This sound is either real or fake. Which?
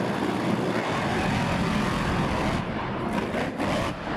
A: real